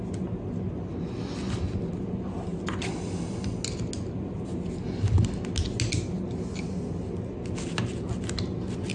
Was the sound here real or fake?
real